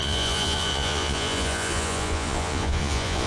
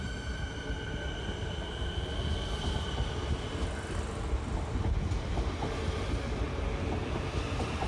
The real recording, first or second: second